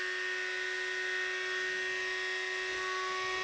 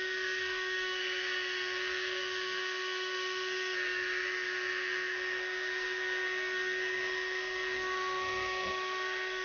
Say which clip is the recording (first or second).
first